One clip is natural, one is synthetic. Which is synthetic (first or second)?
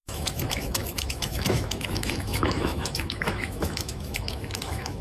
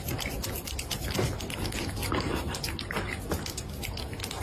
first